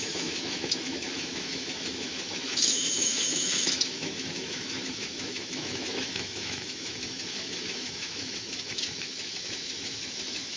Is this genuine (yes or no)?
no